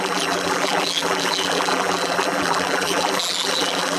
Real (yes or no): no